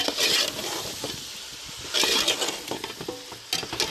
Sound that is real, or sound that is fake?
real